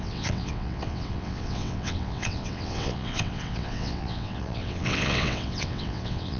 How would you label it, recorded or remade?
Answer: remade